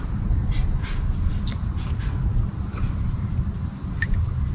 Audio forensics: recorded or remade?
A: recorded